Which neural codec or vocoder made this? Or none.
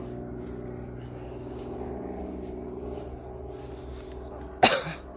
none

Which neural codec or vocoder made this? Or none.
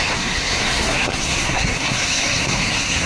codec, SNAC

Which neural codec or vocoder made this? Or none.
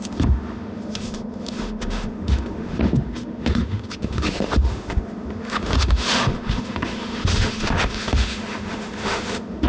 autoencoder, DAC-VAE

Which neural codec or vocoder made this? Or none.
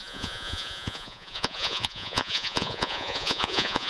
vocoder, Vocos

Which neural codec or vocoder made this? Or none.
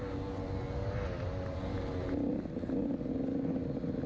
none